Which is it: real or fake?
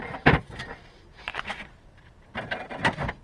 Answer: fake